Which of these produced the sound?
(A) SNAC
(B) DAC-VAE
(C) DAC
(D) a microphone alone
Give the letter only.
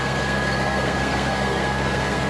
A